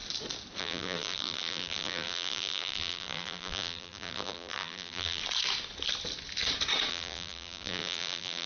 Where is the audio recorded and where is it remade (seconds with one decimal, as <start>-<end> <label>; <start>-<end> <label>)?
0.0-0.6 recorded; 0.6-5.2 remade; 5.2-6.9 recorded; 6.9-8.5 remade